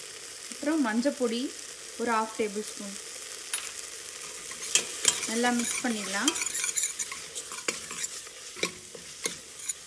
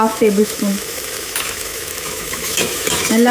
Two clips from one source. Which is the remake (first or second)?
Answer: second